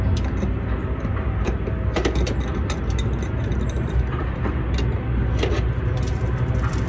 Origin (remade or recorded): recorded